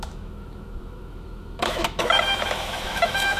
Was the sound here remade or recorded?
remade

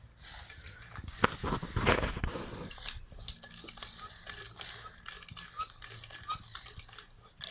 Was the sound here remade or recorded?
recorded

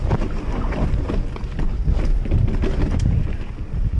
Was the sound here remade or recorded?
recorded